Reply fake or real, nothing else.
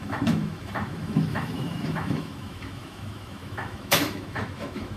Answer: fake